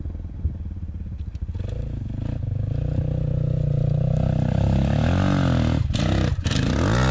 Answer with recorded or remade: recorded